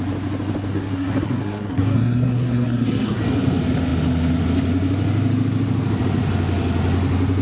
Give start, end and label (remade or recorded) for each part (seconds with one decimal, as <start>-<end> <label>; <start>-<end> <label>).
0.0-0.7 recorded; 0.7-3.2 remade; 3.2-7.4 recorded